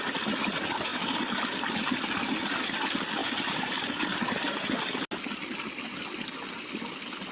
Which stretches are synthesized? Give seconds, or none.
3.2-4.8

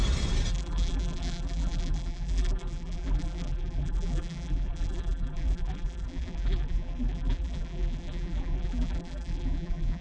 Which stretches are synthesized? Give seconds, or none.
0.5-10.0

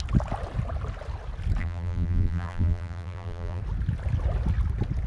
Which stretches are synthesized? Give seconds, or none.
1.6-3.6

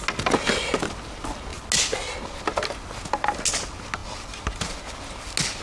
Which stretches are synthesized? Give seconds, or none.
none